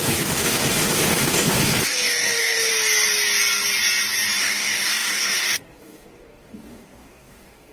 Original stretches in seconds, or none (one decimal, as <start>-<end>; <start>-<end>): 2.7-4.4